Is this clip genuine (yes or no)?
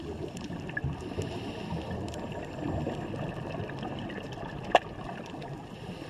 no